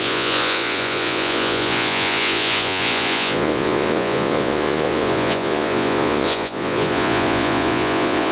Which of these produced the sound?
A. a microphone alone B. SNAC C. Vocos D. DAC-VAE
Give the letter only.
C